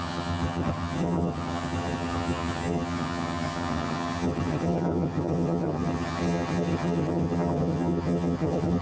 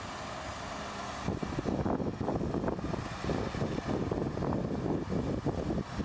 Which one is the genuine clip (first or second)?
second